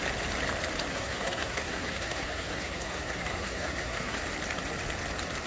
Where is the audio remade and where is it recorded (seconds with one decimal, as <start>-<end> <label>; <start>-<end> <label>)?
0.0-0.9 recorded; 0.9-4.2 remade; 4.2-5.5 recorded

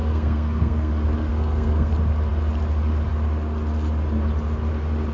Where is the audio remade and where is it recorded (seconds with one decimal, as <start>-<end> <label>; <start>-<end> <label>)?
0.0-0.9 remade; 0.9-1.3 recorded; 1.3-1.9 remade; 1.9-5.1 recorded

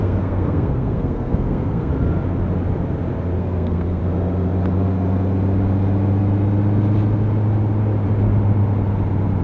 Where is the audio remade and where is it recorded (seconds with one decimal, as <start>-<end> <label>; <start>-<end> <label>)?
0.0-1.9 remade; 1.9-3.4 recorded; 3.4-4.0 remade; 4.0-9.4 recorded

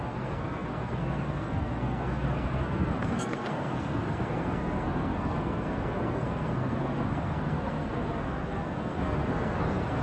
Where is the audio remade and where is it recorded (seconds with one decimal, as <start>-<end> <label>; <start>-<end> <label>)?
0.0-10.0 remade

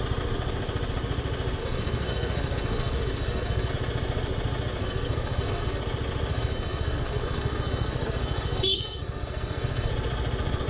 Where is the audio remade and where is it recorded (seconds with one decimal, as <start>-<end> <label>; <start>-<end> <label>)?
0.0-1.6 recorded; 1.6-3.7 remade; 3.7-4.8 recorded; 4.8-5.8 remade; 5.8-6.3 recorded; 6.3-9.9 remade; 9.9-10.7 recorded

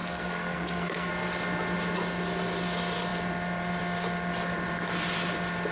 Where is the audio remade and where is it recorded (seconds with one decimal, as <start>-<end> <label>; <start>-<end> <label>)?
0.0-1.1 remade; 1.1-5.7 recorded

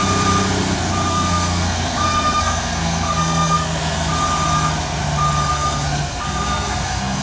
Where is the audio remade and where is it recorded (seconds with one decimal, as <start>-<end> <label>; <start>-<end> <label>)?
0.0-1.1 recorded; 1.1-4.1 remade; 4.1-5.5 recorded; 5.5-7.2 remade

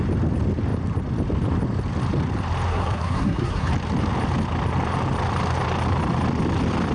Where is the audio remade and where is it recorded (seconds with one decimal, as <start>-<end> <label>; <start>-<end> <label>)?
0.0-2.7 recorded; 2.7-3.7 remade; 3.7-6.9 recorded